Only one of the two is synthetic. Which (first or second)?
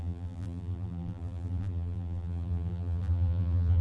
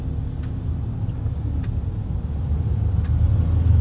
first